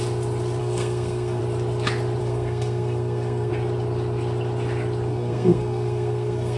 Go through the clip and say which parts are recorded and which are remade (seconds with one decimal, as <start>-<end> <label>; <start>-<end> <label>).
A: 0.0-0.6 recorded; 0.6-1.4 remade; 1.4-2.2 recorded; 2.2-3.5 remade; 3.5-5.1 recorded; 5.1-6.6 remade

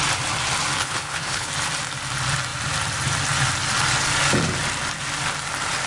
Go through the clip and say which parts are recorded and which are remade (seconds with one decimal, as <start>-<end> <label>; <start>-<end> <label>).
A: 0.0-0.8 recorded; 0.8-1.5 remade; 1.5-5.9 recorded

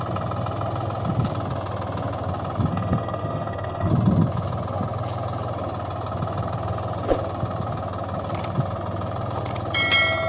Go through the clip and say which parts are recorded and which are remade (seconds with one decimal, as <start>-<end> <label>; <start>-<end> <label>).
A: 0.0-2.7 recorded; 2.7-3.9 remade; 3.9-10.3 recorded

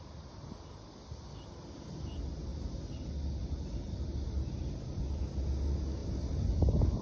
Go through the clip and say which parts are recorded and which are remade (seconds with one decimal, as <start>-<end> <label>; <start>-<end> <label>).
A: 0.0-7.0 recorded